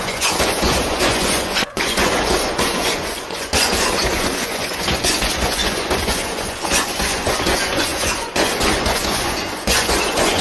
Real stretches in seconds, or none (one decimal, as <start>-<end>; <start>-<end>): none

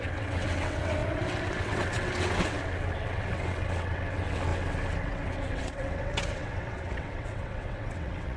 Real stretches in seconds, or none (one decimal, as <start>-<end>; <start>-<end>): none

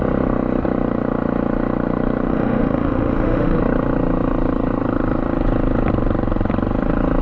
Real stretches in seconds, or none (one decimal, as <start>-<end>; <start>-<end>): 0.0-2.3; 3.6-7.2